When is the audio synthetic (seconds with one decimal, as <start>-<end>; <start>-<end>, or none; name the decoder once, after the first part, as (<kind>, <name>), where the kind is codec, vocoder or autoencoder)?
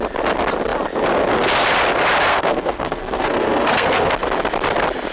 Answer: 2.3-4.1 (codec, SNAC)